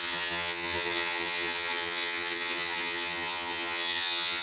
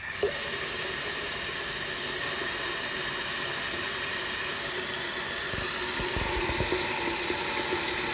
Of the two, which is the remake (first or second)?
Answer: first